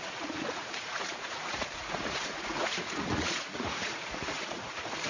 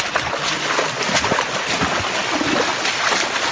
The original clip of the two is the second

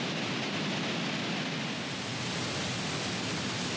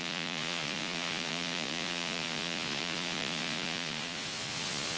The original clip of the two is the first